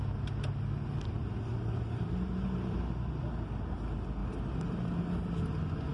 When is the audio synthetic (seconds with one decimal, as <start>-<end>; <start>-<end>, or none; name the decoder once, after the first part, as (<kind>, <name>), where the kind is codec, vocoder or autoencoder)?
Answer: 1.5-2.8 (vocoder, BigVGAN v2); 4.2-5.0

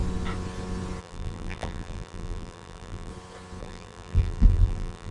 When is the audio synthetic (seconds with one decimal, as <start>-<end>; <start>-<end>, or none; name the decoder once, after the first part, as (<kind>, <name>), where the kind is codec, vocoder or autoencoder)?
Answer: 1.0-3.1 (vocoder, BigVGAN v2); 3.6-5.1